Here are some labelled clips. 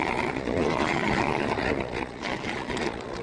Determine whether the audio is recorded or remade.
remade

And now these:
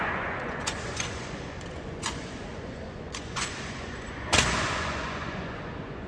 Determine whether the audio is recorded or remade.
remade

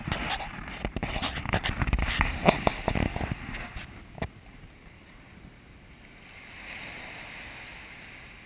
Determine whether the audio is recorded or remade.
recorded